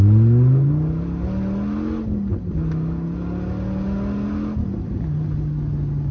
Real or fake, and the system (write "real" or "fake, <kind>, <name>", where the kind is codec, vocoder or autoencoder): real